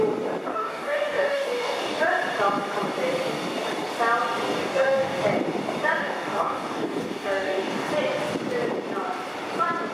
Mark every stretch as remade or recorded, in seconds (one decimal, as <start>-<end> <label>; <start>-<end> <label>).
0.0-0.5 recorded; 0.5-2.0 remade; 2.0-4.6 recorded; 4.6-5.2 remade; 5.2-6.0 recorded; 6.0-7.9 remade; 7.9-9.9 recorded